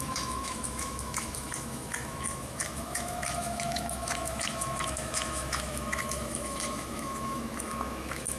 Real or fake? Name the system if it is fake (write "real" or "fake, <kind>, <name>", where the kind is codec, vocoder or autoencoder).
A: fake, autoencoder, DAC-VAE